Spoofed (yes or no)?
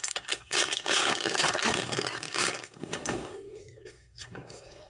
yes